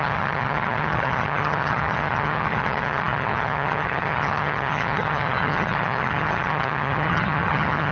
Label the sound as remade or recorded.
remade